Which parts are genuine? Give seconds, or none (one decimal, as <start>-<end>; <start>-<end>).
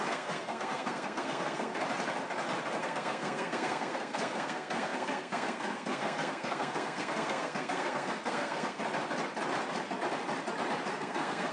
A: 1.7-2.8; 8.8-10.9